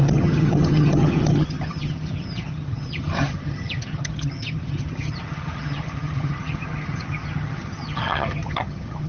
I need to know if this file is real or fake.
fake